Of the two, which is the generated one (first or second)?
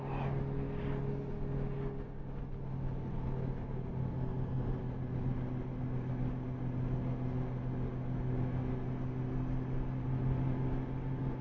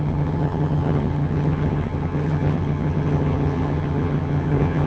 second